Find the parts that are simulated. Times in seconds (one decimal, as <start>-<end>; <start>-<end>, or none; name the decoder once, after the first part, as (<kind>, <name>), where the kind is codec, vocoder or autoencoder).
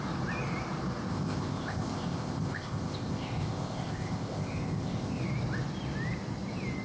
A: 1.1-5.2 (codec, ZipCodec)